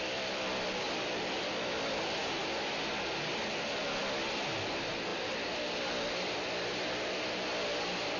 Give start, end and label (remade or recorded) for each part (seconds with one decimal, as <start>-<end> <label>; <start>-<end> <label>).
0.0-8.2 recorded